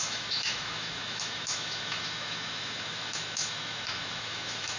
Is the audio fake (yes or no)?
yes